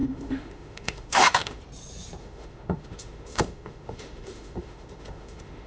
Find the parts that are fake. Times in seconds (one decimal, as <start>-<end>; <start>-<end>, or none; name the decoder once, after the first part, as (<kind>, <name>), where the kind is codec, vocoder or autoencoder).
0.0-1.6 (autoencoder, DAC-VAE); 2.2-5.7

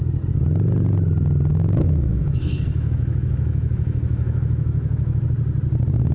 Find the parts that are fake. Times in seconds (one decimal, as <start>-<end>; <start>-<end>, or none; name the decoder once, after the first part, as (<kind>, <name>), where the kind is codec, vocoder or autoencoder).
1.5-5.2 (autoencoder, DAC-VAE)

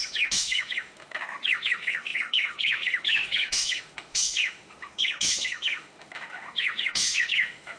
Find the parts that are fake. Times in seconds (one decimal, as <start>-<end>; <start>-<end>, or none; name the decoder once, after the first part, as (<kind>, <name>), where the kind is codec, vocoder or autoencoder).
0.0-7.8 (autoencoder, DAC-VAE)

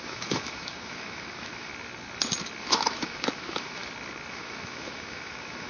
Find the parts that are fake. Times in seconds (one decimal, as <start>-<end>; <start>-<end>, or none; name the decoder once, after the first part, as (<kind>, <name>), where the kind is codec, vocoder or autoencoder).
0.0-1.7 (autoencoder, DAC-VAE); 2.6-3.8; 4.3-5.7

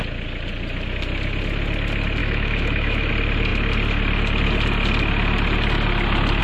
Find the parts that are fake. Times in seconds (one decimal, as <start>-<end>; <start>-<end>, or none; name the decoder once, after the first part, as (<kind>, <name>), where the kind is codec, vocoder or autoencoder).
2.2-3.1 (autoencoder, DAC-VAE)

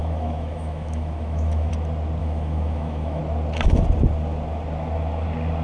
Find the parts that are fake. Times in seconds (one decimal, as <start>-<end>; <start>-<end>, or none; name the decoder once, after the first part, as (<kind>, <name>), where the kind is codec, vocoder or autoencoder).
0.0-1.7 (autoencoder, DAC-VAE); 2.2-3.2